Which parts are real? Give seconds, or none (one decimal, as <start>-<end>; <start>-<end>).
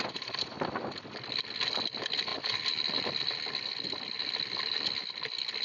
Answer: 0.0-5.6